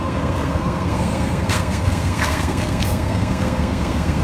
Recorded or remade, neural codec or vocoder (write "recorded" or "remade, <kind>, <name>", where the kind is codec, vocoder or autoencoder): remade, codec, SNAC